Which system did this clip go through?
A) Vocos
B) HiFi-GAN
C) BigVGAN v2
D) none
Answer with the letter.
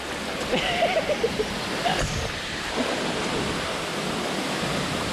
C